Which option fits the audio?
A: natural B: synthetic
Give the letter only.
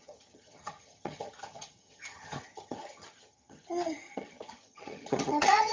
B